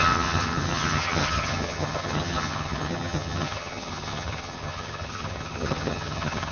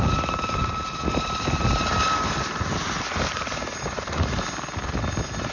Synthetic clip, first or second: first